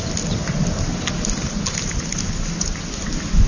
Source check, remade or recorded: recorded